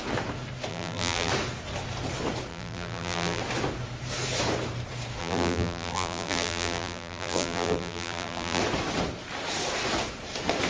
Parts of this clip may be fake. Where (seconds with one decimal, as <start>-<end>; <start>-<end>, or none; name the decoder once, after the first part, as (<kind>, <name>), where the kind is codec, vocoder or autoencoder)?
0.7-1.3 (vocoder, BigVGAN v2); 2.5-3.4; 5.2-8.6

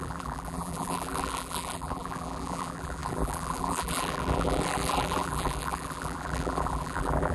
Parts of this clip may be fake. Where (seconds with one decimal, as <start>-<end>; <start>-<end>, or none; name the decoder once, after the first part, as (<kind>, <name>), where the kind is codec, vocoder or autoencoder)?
0.0-7.3 (vocoder, BigVGAN v2)